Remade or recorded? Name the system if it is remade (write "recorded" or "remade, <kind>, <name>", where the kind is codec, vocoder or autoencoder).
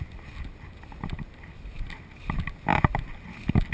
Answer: recorded